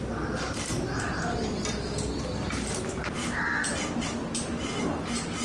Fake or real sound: real